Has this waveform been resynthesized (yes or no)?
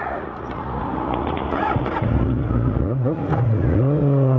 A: yes